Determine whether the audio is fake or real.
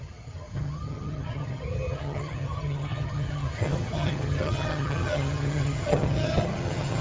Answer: fake